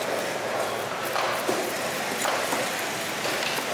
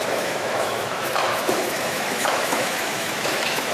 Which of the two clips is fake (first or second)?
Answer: second